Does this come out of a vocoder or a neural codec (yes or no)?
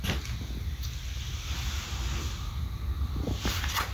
no